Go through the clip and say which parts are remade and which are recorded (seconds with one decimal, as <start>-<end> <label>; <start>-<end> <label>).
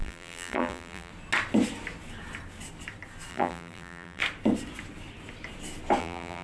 0.0-1.1 remade; 1.1-3.3 recorded; 3.3-4.2 remade; 4.2-6.0 recorded; 6.0-6.4 remade